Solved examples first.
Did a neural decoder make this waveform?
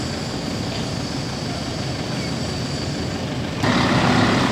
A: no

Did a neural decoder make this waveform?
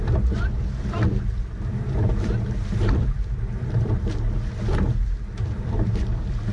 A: yes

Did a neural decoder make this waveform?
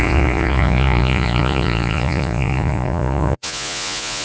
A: yes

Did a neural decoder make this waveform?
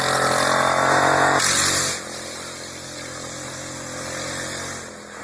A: no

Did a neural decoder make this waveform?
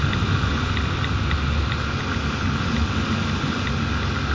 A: no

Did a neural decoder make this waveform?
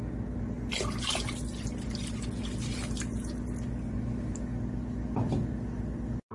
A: no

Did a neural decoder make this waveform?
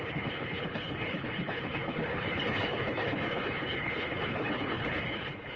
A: yes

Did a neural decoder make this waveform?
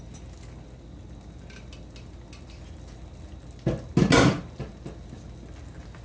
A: no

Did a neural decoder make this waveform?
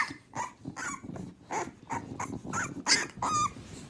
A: no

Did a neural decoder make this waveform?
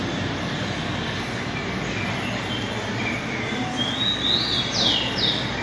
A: no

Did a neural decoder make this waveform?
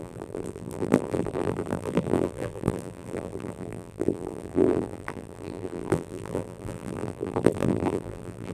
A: yes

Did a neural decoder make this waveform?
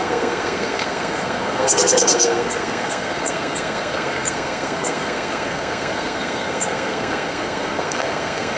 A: yes